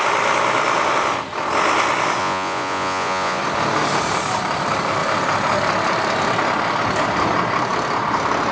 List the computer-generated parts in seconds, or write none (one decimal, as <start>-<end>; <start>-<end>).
2.2-3.4